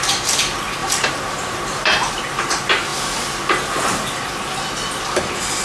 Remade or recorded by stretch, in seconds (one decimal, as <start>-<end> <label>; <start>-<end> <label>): 0.0-0.8 recorded; 0.8-2.1 remade; 2.1-5.6 recorded